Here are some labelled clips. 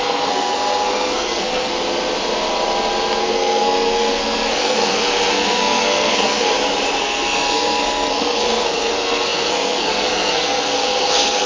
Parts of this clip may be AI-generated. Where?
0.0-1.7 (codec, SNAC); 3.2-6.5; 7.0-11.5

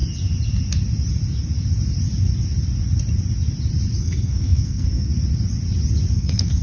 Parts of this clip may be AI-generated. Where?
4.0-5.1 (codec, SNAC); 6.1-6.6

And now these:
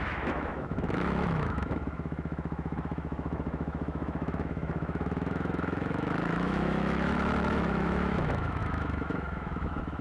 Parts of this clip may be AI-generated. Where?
0.0-10.0 (autoencoder, DAC-VAE)

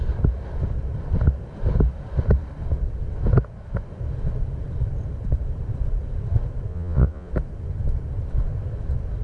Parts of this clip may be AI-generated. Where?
6.7-7.3 (vocoder, Vocos)

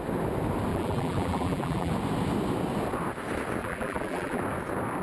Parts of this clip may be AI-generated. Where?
0.7-1.9 (vocoder, BigVGAN v2); 3.6-4.4

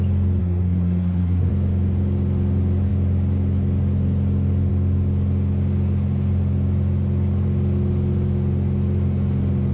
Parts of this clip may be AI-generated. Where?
0.4-1.5 (codec, SNAC)

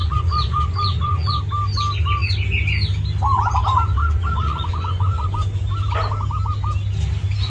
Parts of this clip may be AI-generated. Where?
0.0-1.4 (vocoder, Vocos); 4.0-5.3

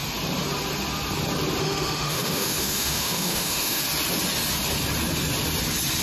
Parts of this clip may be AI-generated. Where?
1.6-3.8 (autoencoder, DAC-VAE)